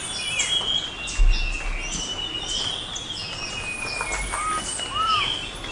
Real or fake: real